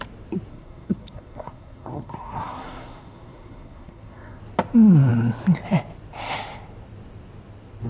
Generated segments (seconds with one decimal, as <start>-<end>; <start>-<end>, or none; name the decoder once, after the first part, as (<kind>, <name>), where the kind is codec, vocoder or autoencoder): 0.5-4.4 (codec, SNAC)

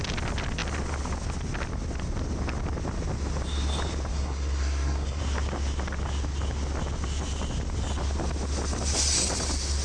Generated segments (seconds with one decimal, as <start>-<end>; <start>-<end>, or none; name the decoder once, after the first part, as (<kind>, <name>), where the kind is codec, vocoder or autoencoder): 4.1-5.2 (codec, SNAC)

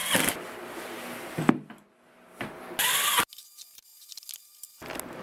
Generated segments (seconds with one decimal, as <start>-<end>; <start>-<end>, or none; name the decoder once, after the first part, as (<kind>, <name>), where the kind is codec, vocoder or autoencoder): none

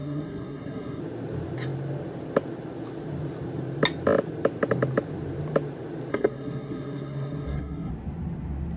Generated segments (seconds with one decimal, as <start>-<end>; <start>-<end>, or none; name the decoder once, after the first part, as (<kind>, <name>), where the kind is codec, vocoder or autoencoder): 0.0-1.0 (codec, SNAC); 6.1-7.9

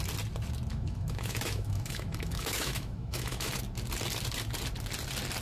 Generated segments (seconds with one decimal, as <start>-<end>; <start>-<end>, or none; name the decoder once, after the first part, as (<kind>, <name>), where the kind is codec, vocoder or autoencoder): 0.7-3.6 (autoencoder, DAC-VAE)